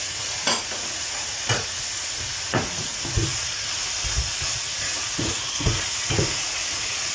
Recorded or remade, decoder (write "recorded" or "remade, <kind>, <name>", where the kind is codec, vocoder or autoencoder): remade, vocoder, Vocos